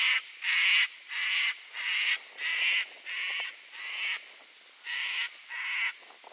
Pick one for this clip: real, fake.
real